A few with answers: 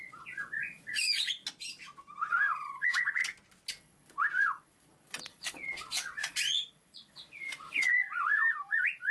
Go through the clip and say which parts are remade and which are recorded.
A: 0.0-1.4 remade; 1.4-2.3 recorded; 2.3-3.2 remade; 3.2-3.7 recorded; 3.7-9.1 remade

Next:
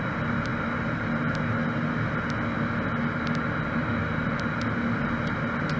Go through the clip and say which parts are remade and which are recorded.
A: 0.0-5.8 recorded

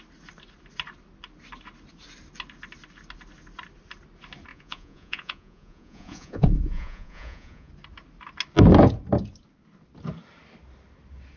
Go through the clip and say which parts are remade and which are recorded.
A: 0.0-4.5 recorded; 4.5-7.7 remade; 7.7-11.4 recorded

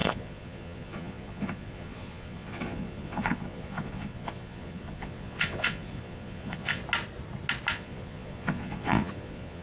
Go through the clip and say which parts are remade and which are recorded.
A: 0.0-6.8 remade; 6.8-7.7 recorded; 7.7-9.6 remade

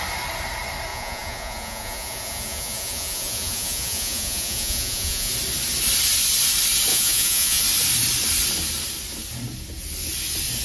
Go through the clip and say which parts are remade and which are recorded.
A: 0.0-0.9 recorded; 0.9-5.3 remade; 5.3-6.9 recorded; 6.9-7.6 remade; 7.6-10.6 recorded

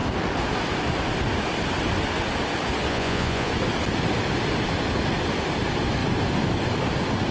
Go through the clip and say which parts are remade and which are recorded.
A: 0.0-2.9 recorded; 2.9-3.5 remade; 3.5-7.3 recorded

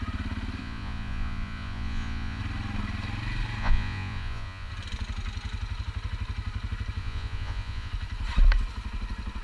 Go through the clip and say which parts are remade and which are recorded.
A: 0.0-0.6 recorded; 0.6-2.4 remade; 2.4-3.6 recorded; 3.6-4.7 remade; 4.7-7.0 recorded; 7.0-7.9 remade; 7.9-9.4 recorded

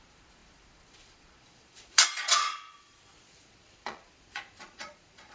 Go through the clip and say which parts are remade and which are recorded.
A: 0.0-5.3 remade